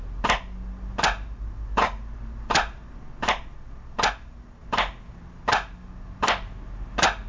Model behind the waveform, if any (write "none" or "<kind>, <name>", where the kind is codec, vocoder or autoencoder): none